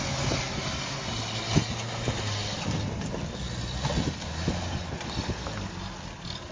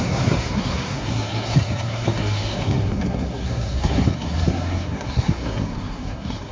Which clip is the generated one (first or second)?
second